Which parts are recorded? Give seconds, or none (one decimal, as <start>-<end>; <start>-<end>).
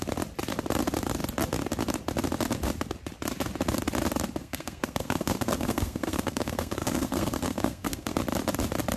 0.0-4.4; 8.2-9.0